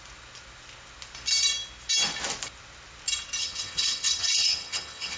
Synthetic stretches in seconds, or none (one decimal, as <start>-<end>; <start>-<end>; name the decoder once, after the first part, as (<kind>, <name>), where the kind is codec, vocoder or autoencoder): 3.4-5.2 (vocoder, HiFi-GAN)